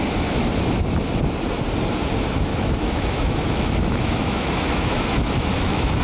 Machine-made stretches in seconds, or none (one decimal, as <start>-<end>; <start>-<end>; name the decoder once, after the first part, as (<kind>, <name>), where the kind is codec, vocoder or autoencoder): 2.5-6.0 (autoencoder, DAC-VAE)